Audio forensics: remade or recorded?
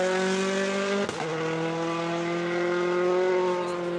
recorded